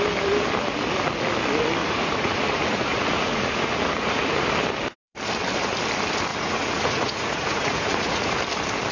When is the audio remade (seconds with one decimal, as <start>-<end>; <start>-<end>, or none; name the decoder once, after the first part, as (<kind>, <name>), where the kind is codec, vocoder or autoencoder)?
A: 1.8-4.5 (vocoder, Vocos); 6.3-8.4